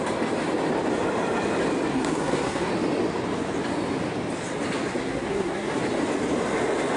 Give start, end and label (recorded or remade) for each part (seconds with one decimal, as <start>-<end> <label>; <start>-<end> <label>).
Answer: 0.0-1.9 recorded; 1.9-2.7 remade; 2.7-4.9 recorded; 4.9-5.8 remade; 5.8-7.0 recorded